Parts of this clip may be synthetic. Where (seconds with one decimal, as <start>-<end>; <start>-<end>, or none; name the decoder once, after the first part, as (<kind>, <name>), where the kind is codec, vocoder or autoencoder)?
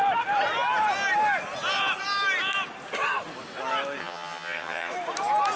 4.0-4.9 (vocoder, HiFi-GAN)